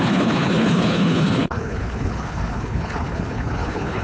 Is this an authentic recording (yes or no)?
no